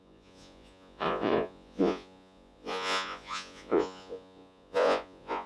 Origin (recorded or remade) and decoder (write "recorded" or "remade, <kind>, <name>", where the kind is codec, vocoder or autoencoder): remade, vocoder, Vocos